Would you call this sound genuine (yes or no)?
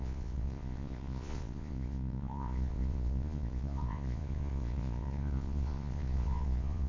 no